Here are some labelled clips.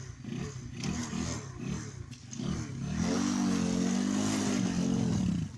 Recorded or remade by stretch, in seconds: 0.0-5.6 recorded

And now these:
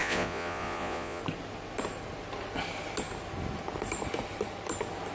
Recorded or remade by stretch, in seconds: 0.0-1.2 remade; 1.2-5.1 recorded

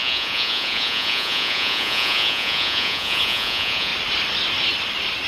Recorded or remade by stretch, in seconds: 0.0-3.9 remade; 3.9-5.3 recorded

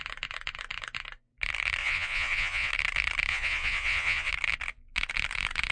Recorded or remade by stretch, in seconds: 0.0-1.8 recorded; 1.8-2.7 remade; 2.7-3.3 recorded; 3.3-4.3 remade; 4.3-5.7 recorded